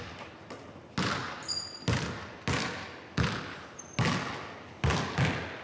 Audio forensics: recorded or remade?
recorded